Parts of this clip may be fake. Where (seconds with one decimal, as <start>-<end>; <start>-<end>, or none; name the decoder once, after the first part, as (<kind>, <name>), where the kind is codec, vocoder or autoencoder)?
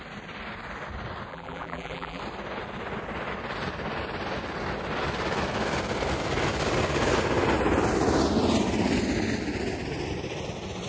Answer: 1.3-2.2 (vocoder, BigVGAN v2)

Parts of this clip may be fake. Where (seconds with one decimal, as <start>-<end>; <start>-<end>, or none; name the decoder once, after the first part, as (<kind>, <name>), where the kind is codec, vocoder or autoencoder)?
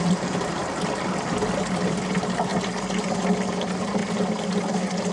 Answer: 0.0-0.6 (vocoder, BigVGAN v2); 1.6-2.5; 3.5-4.0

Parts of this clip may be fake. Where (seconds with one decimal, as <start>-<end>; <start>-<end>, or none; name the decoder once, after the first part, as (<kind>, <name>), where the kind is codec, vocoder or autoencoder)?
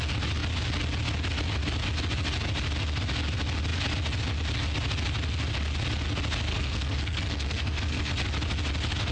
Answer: 6.5-8.1 (codec, SNAC)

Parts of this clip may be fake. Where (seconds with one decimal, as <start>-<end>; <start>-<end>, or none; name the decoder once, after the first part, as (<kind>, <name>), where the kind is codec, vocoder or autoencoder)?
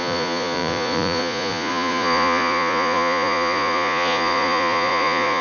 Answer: 0.0-5.4 (vocoder, Vocos)